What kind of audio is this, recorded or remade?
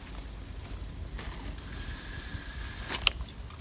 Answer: recorded